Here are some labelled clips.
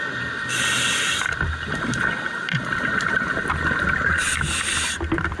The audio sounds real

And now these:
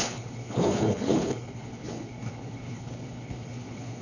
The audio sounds fake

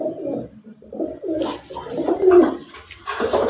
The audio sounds real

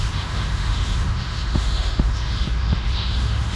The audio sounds fake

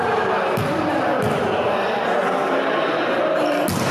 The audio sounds real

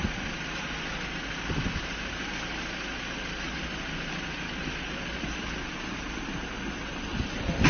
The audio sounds real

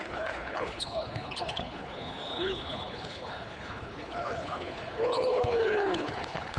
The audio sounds fake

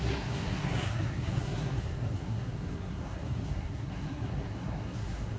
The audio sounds fake